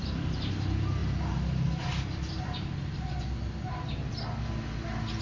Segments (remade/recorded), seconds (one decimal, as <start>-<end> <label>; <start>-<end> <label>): 0.0-5.2 recorded